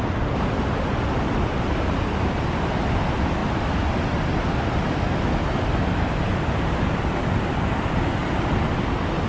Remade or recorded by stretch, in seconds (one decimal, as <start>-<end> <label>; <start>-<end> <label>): 0.0-9.3 recorded